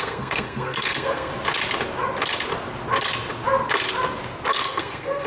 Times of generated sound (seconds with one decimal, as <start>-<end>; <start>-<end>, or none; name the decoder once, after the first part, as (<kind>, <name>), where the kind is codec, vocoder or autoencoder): 0.0-1.3 (codec, SNAC); 4.5-5.3